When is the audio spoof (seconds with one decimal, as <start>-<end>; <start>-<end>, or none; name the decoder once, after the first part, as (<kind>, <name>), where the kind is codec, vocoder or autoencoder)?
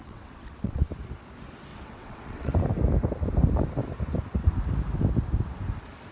0.0-0.9 (vocoder, WaveNeXt); 1.7-2.5